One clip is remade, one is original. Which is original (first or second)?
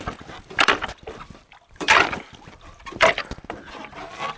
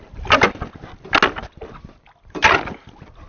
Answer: second